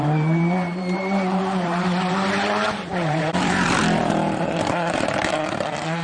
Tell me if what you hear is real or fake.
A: fake